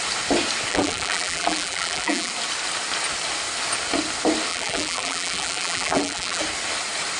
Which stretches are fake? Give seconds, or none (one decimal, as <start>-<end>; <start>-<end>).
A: 0.7-2.3; 4.5-6.4